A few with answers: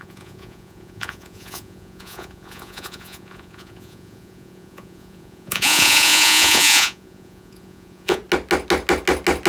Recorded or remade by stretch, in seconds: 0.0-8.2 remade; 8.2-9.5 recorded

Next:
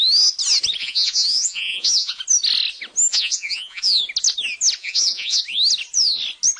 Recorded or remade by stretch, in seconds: 0.0-0.8 recorded; 0.8-2.2 remade; 2.2-3.1 recorded; 3.1-4.0 remade; 4.0-4.8 recorded; 4.8-5.4 remade; 5.4-6.6 recorded

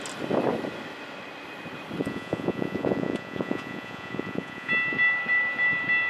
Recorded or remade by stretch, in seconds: 0.0-2.0 recorded; 2.0-4.7 remade; 4.7-6.1 recorded